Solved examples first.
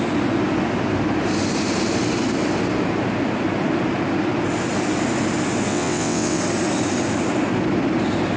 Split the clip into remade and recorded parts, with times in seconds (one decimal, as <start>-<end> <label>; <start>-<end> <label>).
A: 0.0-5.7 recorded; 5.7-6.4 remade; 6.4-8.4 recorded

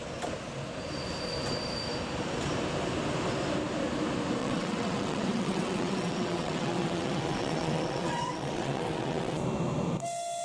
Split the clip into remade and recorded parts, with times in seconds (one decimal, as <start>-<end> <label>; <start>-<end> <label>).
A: 0.0-4.4 recorded; 4.4-9.4 remade; 9.4-10.4 recorded

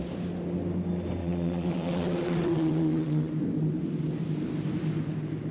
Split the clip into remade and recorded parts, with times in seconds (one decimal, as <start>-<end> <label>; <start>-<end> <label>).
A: 0.0-1.2 recorded; 1.2-3.3 remade; 3.3-5.5 recorded